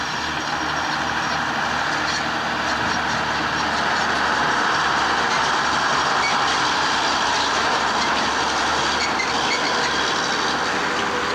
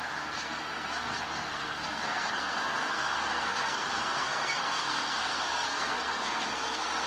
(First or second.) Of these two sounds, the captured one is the first